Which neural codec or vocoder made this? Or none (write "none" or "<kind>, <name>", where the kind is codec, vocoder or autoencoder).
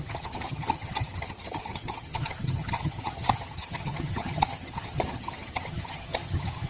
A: vocoder, HiFi-GAN